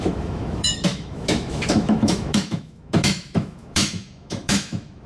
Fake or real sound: fake